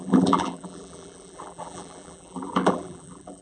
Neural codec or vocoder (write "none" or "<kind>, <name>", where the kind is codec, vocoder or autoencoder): vocoder, BigVGAN v2